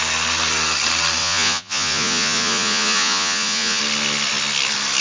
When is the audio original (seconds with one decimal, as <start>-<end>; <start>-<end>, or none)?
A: 0.0-1.2; 3.8-5.0